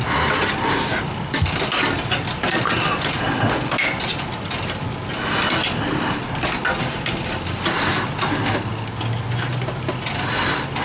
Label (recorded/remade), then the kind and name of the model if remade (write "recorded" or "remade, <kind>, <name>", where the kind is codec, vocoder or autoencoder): recorded